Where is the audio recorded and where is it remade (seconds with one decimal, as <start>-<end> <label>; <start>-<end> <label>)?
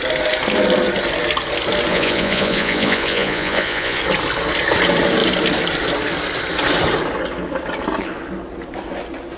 0.0-1.9 recorded; 1.9-4.0 remade; 4.0-9.4 recorded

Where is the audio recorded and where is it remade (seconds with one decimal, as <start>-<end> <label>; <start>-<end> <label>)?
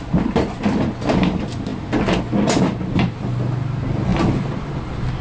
0.0-5.2 recorded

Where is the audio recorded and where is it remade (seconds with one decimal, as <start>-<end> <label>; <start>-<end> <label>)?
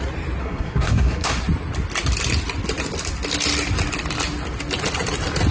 0.0-0.4 recorded; 0.4-1.4 remade; 1.4-5.5 recorded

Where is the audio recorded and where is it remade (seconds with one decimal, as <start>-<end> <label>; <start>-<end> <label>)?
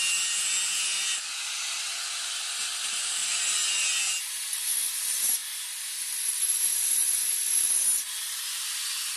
0.0-9.2 recorded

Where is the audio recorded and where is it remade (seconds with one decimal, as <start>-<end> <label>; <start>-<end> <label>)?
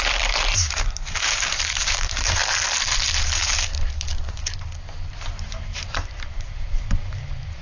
0.0-2.4 remade; 2.4-3.2 recorded; 3.2-4.1 remade; 4.1-5.9 recorded; 5.9-7.6 remade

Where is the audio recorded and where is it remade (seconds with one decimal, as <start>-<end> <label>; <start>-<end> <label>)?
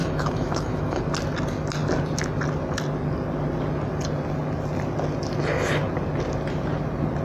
0.0-1.0 remade; 1.0-7.2 recorded